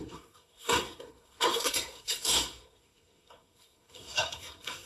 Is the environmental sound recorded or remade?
remade